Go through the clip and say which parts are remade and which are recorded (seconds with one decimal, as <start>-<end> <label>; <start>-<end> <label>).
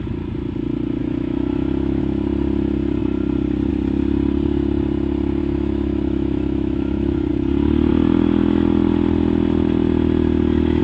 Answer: 0.0-1.0 recorded; 1.0-2.0 remade; 2.0-5.4 recorded; 5.4-7.3 remade; 7.3-10.8 recorded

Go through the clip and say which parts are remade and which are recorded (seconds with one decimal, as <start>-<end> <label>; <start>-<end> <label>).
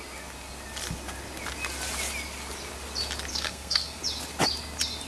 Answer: 0.0-3.3 recorded; 3.3-4.0 remade; 4.0-5.1 recorded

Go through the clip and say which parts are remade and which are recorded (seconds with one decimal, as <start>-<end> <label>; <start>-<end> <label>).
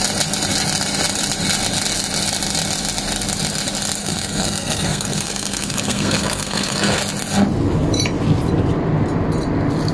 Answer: 0.0-4.0 recorded; 4.0-7.0 remade; 7.0-9.9 recorded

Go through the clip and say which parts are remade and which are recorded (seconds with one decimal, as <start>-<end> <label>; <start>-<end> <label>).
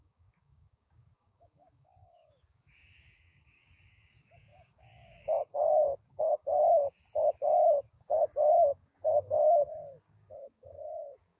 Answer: 0.0-11.4 remade